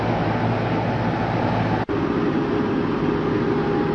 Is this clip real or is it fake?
real